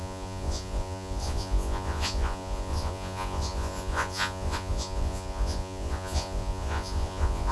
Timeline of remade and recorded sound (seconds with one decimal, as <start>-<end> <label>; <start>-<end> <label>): 0.0-7.5 remade